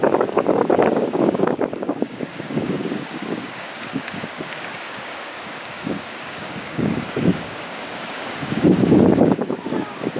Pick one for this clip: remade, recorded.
remade